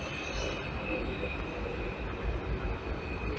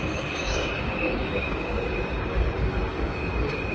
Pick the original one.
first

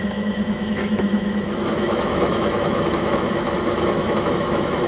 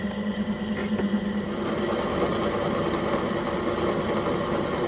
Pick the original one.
second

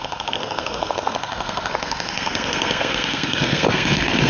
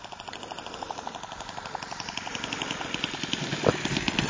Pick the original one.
second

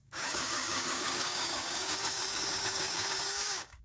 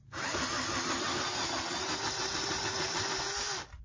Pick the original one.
second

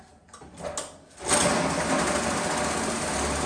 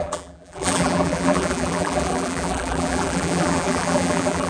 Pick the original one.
first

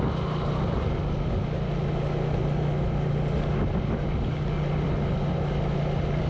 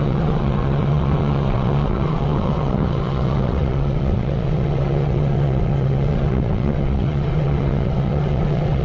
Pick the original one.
first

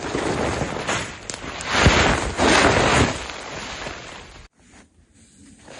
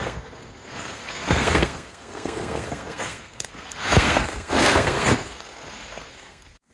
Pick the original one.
first